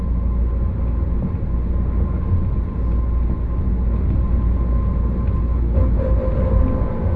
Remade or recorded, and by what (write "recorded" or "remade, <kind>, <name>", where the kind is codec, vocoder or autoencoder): recorded